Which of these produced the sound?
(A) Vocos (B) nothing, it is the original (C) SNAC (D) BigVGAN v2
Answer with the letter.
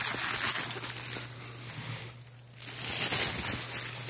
B